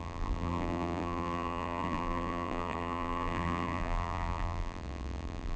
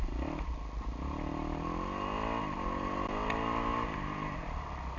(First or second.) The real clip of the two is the second